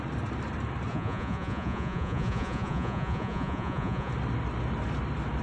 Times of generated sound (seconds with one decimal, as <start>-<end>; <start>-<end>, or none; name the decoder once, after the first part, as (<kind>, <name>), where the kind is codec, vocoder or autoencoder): 0.9-4.1 (vocoder, Vocos)